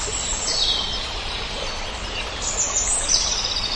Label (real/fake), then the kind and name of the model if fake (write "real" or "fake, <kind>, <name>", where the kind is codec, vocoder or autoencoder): real